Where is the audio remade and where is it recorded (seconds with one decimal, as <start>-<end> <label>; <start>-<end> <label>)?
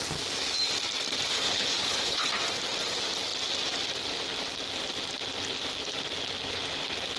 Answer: 0.0-1.3 recorded; 1.3-2.3 remade; 2.3-7.2 recorded